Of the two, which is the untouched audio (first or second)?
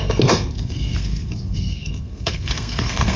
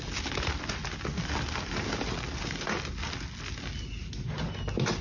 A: second